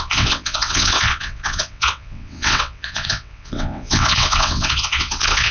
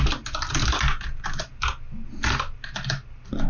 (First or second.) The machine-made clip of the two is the first